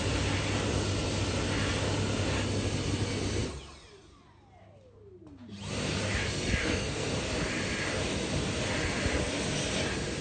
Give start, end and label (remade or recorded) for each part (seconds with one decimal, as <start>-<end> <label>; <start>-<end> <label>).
0.0-6.6 recorded; 6.6-7.1 remade; 7.1-10.2 recorded